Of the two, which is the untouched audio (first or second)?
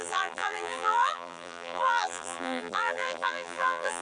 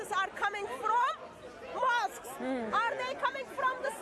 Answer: second